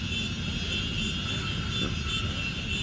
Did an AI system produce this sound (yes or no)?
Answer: no